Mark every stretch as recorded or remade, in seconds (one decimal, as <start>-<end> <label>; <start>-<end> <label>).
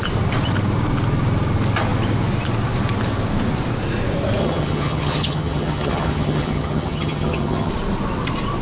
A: 0.0-4.4 recorded; 4.4-7.7 remade; 7.7-8.6 recorded